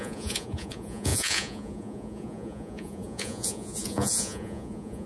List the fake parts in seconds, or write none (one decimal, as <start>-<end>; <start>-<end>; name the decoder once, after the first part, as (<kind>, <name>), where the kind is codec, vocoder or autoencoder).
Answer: 0.0-5.1 (vocoder, Vocos)